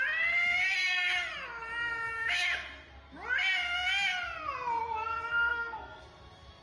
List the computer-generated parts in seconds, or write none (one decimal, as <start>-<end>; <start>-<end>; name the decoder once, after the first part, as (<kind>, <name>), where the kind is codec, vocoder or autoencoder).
5.3-6.0 (codec, SNAC)